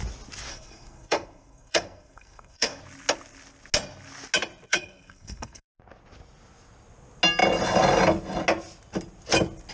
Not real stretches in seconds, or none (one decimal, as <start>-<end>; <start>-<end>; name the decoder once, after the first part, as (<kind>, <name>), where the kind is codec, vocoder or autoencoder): 0.5-2.8 (codec, SNAC); 4.7-5.8